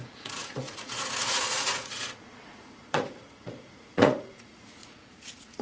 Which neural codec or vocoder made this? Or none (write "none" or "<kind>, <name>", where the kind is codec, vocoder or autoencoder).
vocoder, Vocos